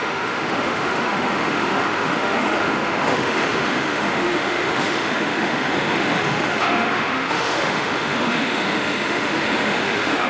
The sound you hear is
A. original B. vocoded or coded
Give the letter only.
B